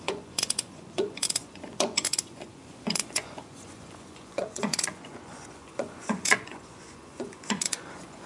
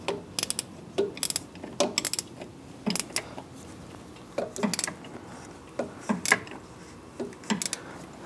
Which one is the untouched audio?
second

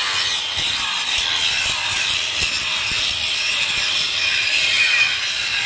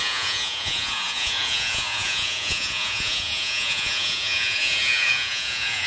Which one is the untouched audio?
first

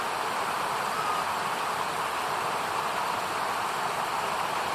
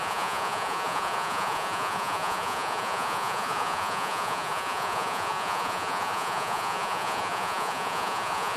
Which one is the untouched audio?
first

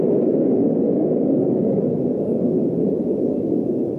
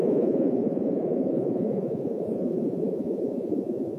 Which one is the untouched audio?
first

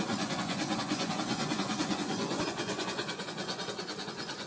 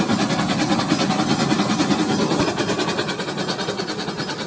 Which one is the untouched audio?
second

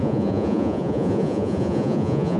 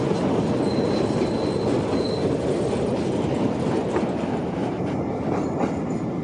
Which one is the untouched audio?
second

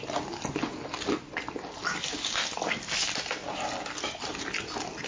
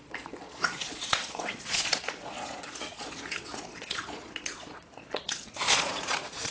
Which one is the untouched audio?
first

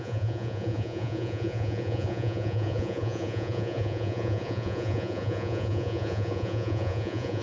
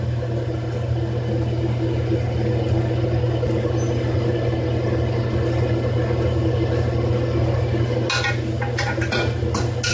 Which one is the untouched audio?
second